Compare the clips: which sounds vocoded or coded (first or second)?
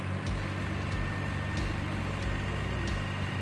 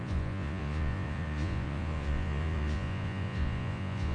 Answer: second